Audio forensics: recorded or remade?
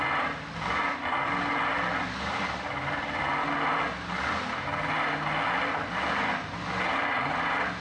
recorded